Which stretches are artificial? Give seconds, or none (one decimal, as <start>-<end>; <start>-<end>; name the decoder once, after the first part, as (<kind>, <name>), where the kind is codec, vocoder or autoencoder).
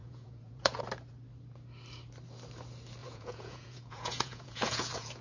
0.0-0.8 (vocoder, Vocos); 3.0-5.2